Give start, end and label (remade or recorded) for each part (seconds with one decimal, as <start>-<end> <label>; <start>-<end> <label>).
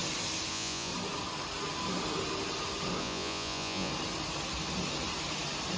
0.0-0.5 recorded; 0.5-0.9 remade; 0.9-3.0 recorded; 3.0-3.9 remade; 3.9-5.8 recorded